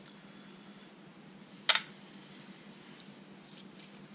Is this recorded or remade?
recorded